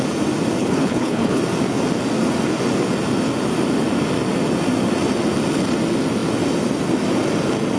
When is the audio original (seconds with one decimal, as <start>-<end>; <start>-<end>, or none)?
0.0-0.6; 1.4-7.8